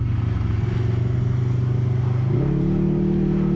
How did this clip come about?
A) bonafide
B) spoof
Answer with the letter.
A